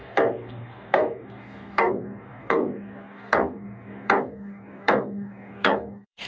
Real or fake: fake